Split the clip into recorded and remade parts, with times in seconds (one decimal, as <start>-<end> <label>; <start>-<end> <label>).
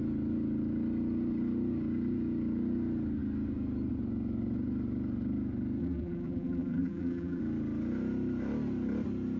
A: 0.0-5.8 recorded; 5.8-7.4 remade; 7.4-9.4 recorded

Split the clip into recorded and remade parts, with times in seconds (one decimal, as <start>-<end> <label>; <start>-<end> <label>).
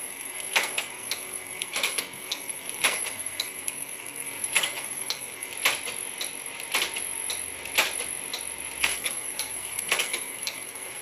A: 0.0-5.5 remade; 5.5-8.8 recorded; 8.8-11.0 remade